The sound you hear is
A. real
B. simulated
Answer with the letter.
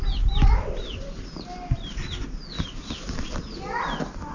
A